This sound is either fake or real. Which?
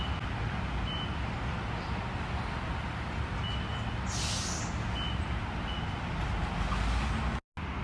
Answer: real